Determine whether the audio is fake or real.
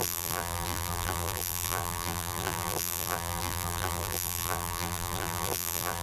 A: fake